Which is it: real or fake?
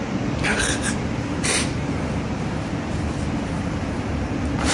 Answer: real